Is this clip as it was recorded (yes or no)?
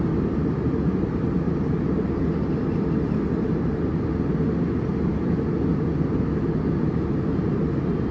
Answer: yes